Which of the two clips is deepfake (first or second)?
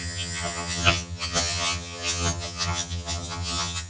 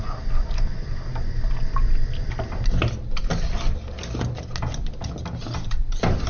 first